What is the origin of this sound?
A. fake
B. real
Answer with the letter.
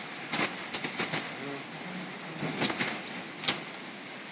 B